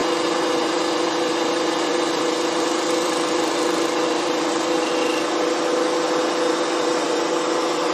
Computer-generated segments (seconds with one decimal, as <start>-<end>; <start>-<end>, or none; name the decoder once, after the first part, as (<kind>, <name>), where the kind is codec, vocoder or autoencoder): 0.0-4.9 (vocoder, BigVGAN v2); 6.5-7.9